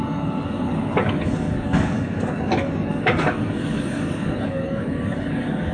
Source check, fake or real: fake